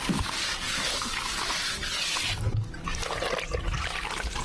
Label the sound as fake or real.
real